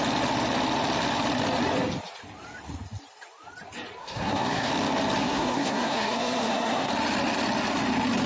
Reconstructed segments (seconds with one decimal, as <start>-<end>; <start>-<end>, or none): 4.0-4.7; 5.2-6.9